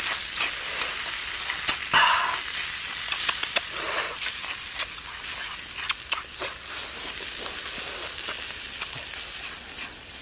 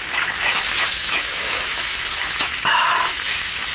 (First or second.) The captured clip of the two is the first